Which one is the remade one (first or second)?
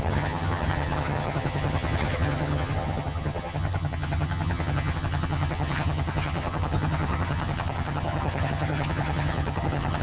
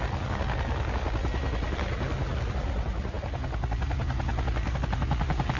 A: first